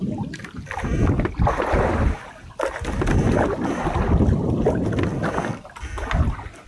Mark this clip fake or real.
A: real